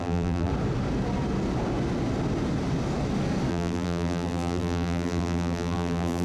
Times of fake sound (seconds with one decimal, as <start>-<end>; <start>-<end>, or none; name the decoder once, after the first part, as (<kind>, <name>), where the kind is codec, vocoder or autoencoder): 0.0-0.5 (vocoder, BigVGAN v2); 3.5-6.2